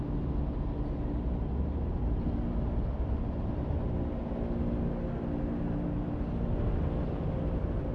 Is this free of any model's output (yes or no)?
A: yes